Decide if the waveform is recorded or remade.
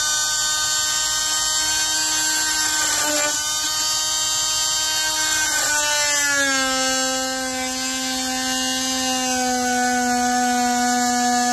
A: recorded